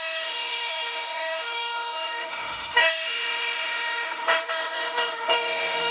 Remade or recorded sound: remade